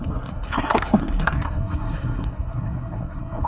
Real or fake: fake